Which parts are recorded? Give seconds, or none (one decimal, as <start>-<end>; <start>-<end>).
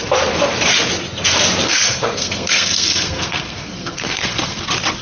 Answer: 0.0-1.6; 4.6-5.0